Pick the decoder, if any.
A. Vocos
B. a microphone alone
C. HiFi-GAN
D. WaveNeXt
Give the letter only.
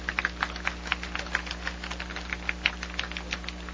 B